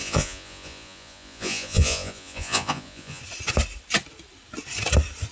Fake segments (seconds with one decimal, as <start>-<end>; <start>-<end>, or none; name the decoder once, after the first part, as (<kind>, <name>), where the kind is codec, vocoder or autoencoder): 0.0-3.2 (vocoder, Vocos)